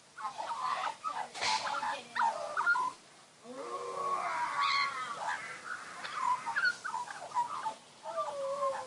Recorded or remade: recorded